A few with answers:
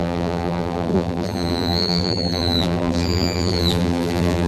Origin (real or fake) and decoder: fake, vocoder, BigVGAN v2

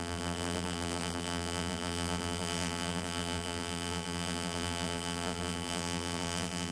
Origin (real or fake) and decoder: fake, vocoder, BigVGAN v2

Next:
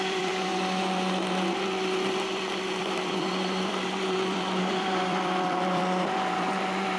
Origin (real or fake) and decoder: fake, vocoder, BigVGAN v2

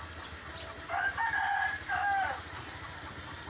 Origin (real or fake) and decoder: real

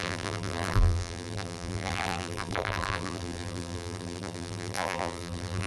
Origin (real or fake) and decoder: fake, vocoder, BigVGAN v2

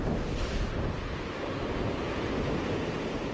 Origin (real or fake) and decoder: real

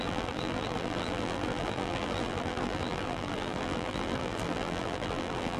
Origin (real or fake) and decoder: fake, vocoder, BigVGAN v2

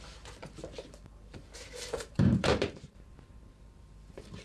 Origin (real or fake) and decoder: fake, vocoder, BigVGAN v2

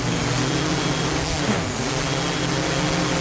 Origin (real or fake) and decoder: real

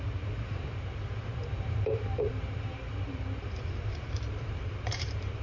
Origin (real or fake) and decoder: fake, vocoder, BigVGAN v2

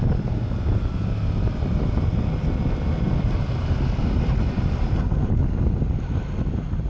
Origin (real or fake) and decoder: real